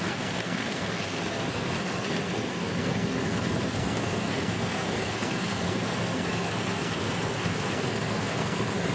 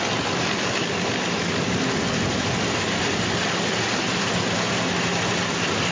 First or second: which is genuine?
second